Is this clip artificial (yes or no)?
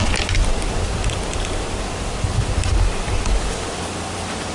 no